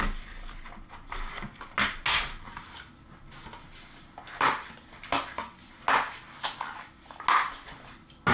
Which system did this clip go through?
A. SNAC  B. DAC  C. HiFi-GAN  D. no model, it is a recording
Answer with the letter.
D